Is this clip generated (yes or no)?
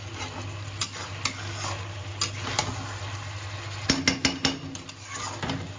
no